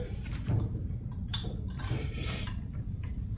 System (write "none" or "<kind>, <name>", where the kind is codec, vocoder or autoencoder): vocoder, BigVGAN v2